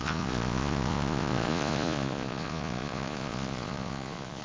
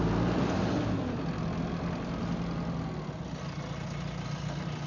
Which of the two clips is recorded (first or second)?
second